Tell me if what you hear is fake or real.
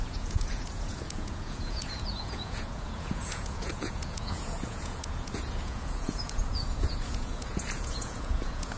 fake